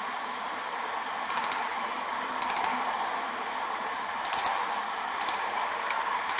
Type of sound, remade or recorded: remade